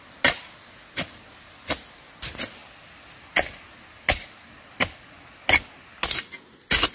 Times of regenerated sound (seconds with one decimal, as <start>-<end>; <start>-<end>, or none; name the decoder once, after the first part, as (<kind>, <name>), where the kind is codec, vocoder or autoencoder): none